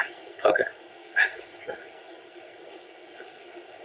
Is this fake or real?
fake